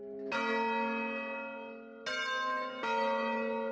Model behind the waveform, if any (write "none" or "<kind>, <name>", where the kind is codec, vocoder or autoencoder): none